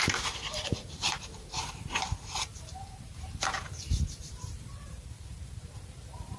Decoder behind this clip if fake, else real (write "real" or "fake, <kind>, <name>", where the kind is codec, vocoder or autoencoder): fake, vocoder, BigVGAN v2